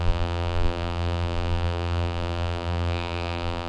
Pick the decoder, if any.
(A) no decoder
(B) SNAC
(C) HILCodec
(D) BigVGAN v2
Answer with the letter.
D